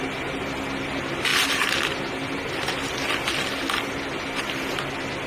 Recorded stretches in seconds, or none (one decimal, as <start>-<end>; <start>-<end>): 0.0-5.3